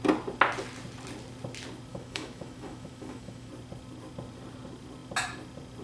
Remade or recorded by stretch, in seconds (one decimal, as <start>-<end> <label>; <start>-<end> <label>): 0.0-1.9 recorded; 1.9-3.5 remade; 3.5-5.8 recorded